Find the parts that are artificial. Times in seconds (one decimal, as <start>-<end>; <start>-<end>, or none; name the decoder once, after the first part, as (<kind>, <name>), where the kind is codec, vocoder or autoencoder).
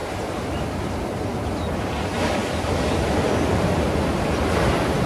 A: none